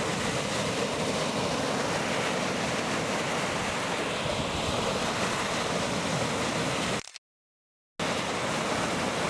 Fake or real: real